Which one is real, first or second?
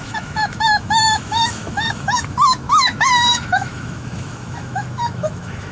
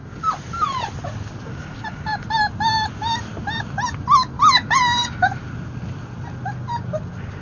second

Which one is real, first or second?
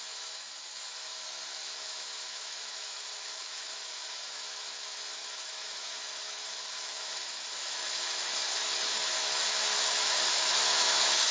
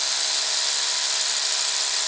second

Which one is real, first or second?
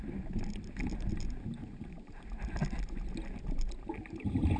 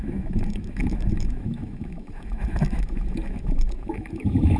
first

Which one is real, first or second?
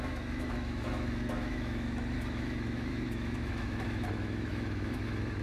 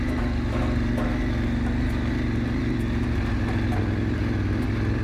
second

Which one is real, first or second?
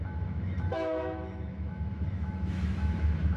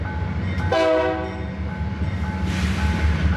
second